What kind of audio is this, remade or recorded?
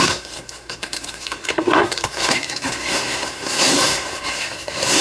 remade